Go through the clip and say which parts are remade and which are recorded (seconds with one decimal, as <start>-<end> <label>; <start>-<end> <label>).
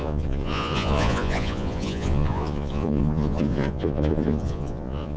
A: 0.0-5.2 remade